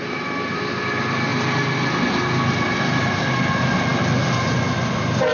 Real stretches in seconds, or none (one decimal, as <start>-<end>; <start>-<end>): 0.0-5.3